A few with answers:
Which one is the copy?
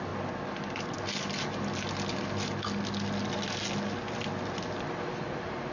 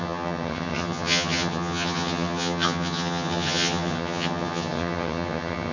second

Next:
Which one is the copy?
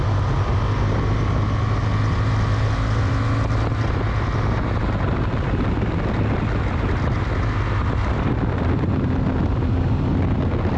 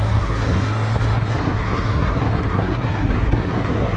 second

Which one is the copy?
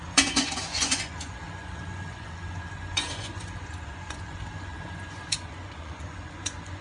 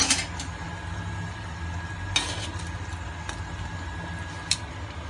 first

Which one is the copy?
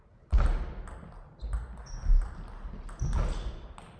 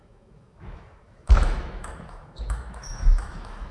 second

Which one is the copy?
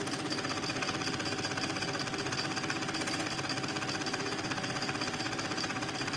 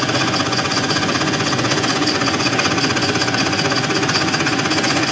second